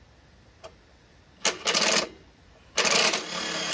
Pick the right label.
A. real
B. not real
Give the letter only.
A